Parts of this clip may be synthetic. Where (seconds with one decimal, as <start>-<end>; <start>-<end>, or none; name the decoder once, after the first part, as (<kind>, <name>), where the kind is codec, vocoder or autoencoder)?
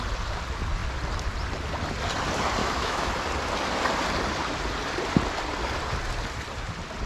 2.6-3.1 (autoencoder, DAC-VAE)